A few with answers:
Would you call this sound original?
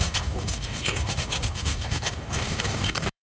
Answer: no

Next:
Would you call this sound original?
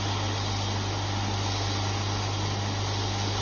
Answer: yes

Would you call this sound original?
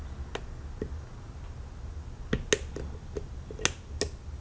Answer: yes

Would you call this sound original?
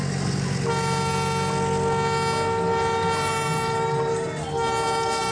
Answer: yes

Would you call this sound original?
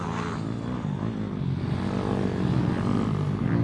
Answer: yes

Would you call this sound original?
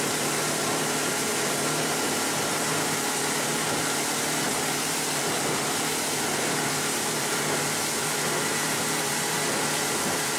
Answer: no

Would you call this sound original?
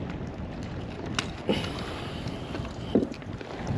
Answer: yes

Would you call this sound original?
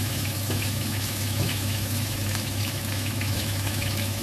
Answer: no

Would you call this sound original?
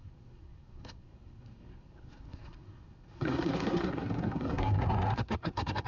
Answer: no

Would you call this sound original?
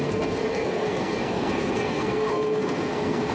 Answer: no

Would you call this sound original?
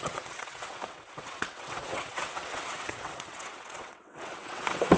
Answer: no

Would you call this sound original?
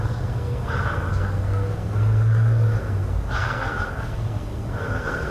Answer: no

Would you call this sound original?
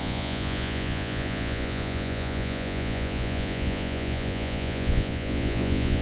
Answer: no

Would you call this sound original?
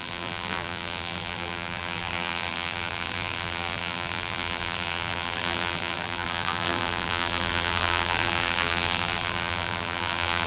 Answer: no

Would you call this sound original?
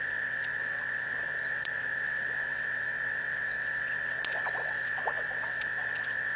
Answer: no